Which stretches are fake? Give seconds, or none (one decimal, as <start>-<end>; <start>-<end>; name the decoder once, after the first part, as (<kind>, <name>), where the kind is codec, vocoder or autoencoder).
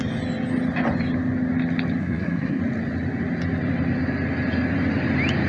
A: 2.0-2.6 (codec, SNAC)